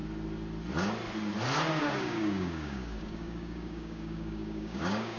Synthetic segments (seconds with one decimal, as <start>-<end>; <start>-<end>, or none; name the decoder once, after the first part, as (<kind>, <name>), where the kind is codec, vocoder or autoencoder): 1.7-5.2 (codec, DAC)